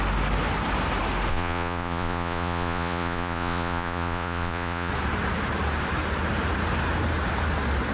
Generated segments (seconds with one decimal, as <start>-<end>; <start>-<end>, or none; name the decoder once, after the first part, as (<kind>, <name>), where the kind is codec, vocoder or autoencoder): 1.3-4.9 (vocoder, Vocos)